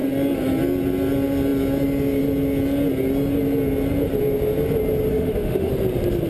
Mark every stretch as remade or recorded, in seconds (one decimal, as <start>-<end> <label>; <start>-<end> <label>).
0.0-5.1 recorded; 5.1-5.7 remade; 5.7-6.3 recorded